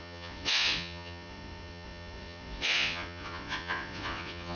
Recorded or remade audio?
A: remade